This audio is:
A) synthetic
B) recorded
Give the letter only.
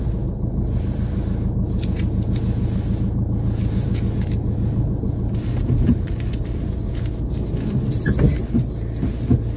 B